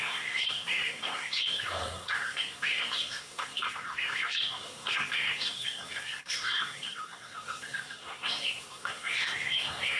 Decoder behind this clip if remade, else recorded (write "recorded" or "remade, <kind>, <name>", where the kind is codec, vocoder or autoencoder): remade, codec, SNAC